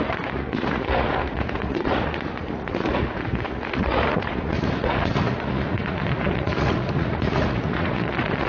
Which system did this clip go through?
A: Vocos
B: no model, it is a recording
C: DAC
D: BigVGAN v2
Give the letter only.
A